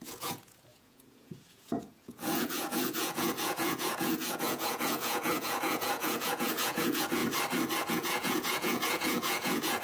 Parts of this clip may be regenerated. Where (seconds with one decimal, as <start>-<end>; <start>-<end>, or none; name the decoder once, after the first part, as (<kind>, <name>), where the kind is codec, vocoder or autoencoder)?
0.0-7.2 (vocoder, Vocos); 7.9-9.8